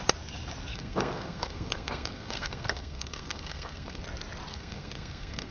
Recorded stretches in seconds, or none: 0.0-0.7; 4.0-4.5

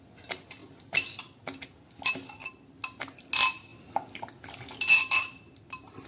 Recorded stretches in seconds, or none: 0.0-6.1

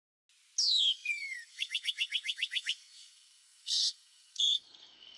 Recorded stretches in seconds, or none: 0.0-0.6